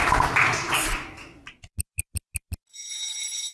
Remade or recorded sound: recorded